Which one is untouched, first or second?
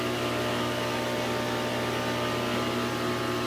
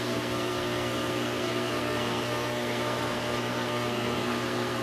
first